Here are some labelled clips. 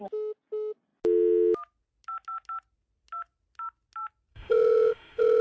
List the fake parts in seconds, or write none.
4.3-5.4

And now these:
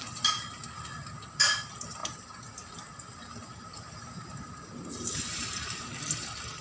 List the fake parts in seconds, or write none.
none

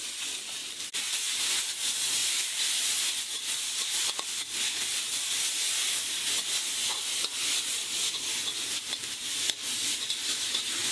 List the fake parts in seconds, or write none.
none

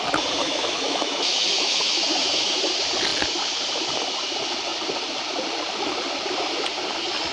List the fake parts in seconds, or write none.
0.4-2.7

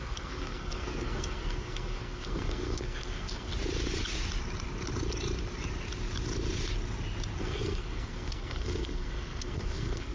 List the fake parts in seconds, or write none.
0.0-3.5; 7.4-10.1

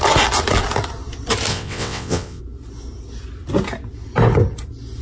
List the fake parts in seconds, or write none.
1.5-2.4

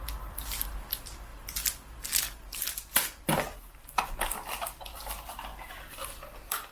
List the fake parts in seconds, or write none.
none